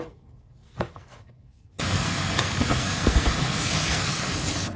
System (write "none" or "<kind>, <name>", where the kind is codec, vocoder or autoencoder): codec, SNAC